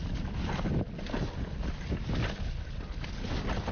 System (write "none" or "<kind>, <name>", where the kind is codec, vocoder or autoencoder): none